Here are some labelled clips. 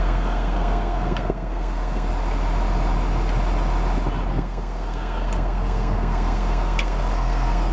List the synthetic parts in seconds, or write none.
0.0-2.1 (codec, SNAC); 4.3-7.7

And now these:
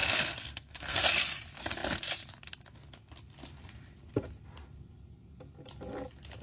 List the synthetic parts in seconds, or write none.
0.0-1.1 (codec, SNAC)

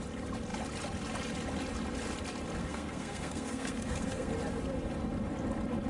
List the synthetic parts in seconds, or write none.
2.6-4.3 (codec, SNAC)